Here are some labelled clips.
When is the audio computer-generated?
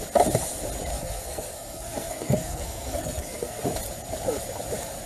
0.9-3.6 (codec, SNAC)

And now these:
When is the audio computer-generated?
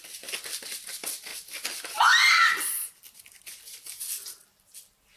none